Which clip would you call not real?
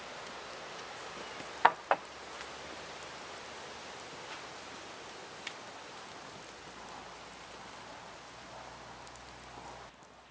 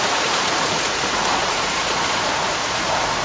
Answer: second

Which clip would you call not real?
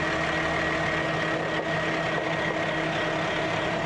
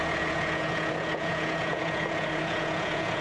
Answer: second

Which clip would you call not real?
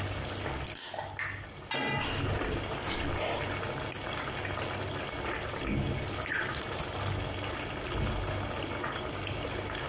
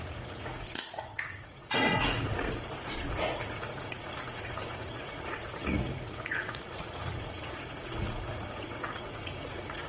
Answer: second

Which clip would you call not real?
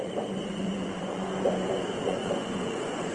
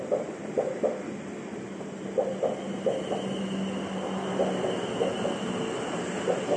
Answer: first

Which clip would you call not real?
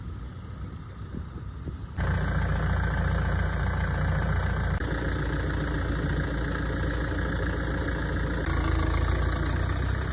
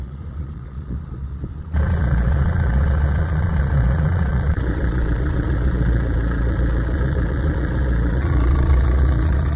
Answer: second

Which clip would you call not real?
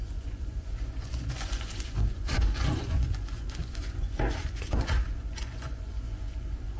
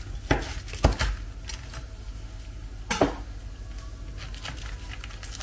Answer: first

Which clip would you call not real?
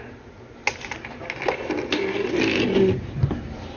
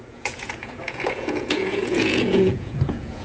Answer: second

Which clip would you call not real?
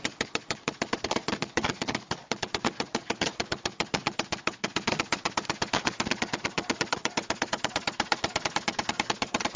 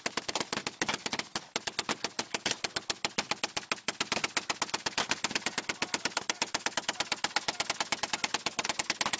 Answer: first